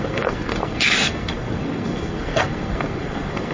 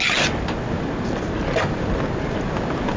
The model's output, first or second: first